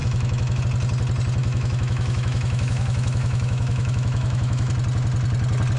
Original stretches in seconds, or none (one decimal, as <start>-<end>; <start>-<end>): 0.6-1.4; 4.7-5.8